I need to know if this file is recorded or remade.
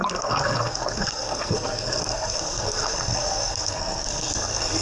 remade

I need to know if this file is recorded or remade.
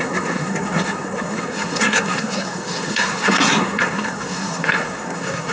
remade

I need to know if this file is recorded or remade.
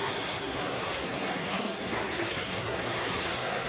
remade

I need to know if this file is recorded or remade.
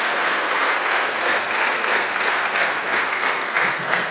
remade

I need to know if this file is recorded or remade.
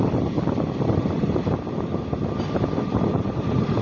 recorded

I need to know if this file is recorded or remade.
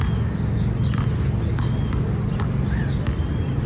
recorded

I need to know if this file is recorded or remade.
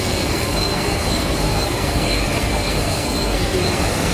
remade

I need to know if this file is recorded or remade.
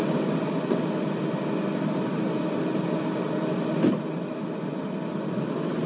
recorded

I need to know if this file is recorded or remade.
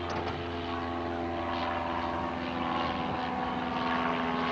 recorded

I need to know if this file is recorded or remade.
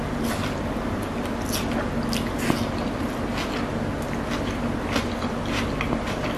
recorded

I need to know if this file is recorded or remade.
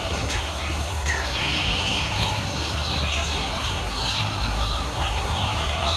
remade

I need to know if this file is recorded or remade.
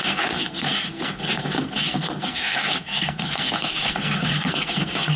remade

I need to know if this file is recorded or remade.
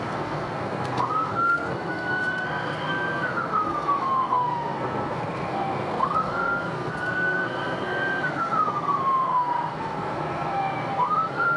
remade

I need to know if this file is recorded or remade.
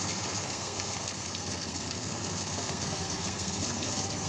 remade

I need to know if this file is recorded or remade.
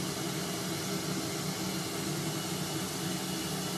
recorded